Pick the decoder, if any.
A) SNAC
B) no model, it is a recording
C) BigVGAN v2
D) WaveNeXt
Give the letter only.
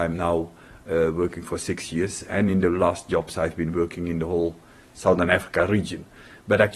C